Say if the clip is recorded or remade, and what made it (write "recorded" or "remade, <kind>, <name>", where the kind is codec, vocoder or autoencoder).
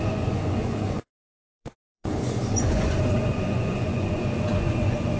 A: remade, vocoder, Vocos